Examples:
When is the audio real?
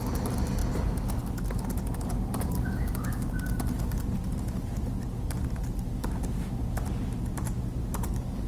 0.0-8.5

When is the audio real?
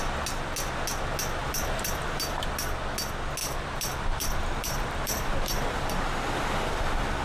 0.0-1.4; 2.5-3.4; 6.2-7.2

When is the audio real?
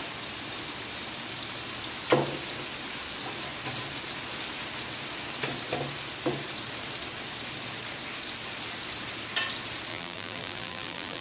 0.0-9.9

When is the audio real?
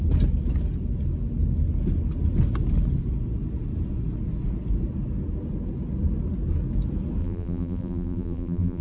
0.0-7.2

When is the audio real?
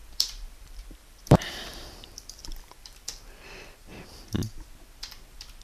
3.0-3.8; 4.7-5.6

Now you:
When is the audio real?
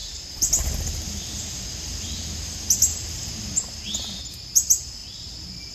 3.3-5.7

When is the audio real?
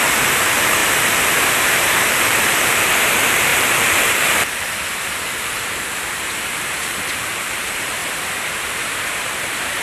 0.8-1.9; 8.0-9.2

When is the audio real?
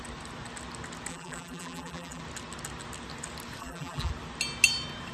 0.0-1.1; 2.2-3.6; 4.1-5.1